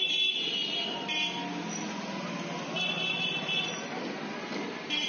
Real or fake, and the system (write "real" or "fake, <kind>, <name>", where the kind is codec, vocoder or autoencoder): real